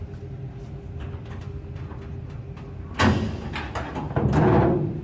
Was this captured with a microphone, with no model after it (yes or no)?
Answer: yes